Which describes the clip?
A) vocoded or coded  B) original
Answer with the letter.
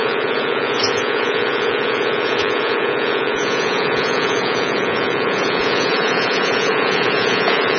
A